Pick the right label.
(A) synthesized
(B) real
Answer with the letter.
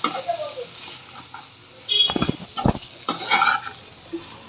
B